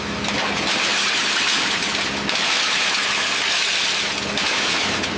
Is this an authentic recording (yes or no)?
yes